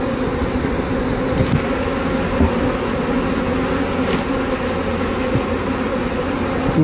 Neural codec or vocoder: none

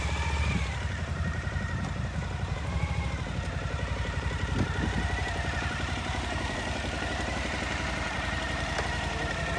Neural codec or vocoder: vocoder, BigVGAN v2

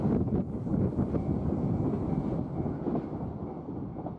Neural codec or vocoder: none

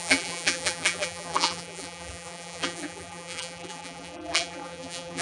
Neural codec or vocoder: vocoder, BigVGAN v2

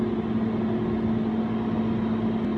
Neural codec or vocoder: none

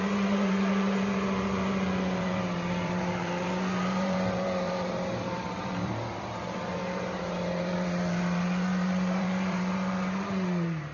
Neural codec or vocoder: vocoder, BigVGAN v2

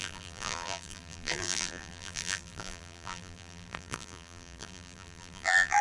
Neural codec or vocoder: vocoder, BigVGAN v2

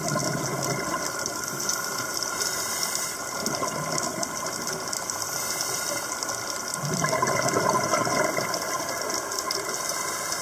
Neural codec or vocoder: none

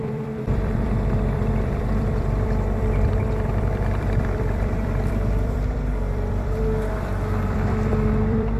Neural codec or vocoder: vocoder, BigVGAN v2